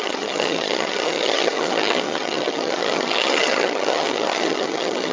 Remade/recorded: remade